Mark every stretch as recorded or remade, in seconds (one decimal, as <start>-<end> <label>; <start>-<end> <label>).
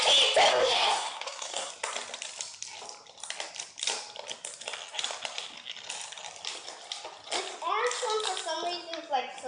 0.0-0.5 recorded; 0.5-1.7 remade; 1.7-9.5 recorded